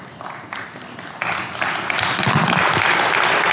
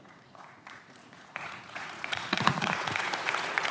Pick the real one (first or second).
first